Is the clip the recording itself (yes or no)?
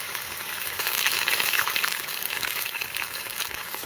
no